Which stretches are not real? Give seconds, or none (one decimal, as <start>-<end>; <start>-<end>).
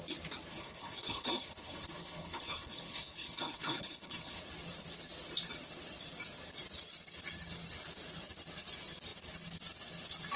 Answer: 0.5-4.4